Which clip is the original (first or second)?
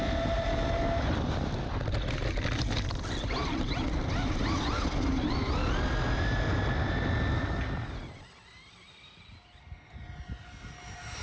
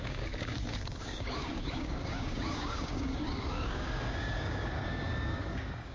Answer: first